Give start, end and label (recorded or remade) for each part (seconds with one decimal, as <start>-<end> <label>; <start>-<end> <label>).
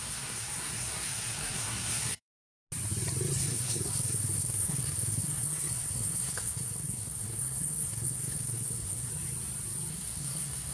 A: 0.0-2.5 remade; 2.5-3.4 recorded; 3.4-9.1 remade; 9.1-9.9 recorded; 9.9-10.7 remade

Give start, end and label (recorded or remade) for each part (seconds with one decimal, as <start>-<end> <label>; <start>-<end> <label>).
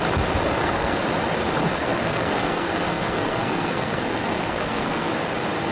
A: 0.0-0.5 recorded; 0.5-1.0 remade; 1.0-1.7 recorded; 1.7-5.1 remade; 5.1-5.7 recorded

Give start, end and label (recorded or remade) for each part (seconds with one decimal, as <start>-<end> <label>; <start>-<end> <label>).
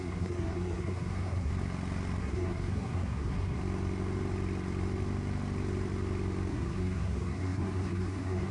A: 0.0-1.5 remade; 1.5-2.2 recorded; 2.2-3.6 remade; 3.6-6.5 recorded; 6.5-8.5 remade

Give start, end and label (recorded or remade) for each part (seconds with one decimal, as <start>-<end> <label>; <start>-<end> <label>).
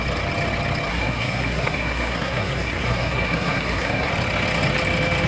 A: 0.0-0.9 recorded; 0.9-4.1 remade; 4.1-5.3 recorded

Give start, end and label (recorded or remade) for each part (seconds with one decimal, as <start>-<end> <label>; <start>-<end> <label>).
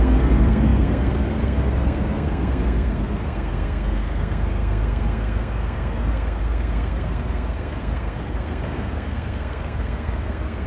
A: 0.0-10.7 remade